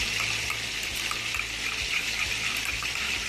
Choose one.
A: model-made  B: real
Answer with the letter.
A